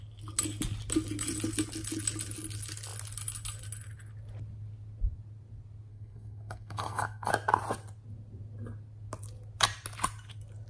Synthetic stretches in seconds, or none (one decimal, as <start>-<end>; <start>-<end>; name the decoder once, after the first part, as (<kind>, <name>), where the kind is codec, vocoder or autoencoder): 5.9-7.3 (codec, SNAC)